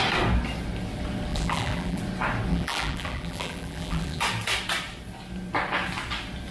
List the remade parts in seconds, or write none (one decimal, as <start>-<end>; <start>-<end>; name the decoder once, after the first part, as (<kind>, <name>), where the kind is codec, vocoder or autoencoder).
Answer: 1.3-2.0 (vocoder, BigVGAN v2); 2.5-4.2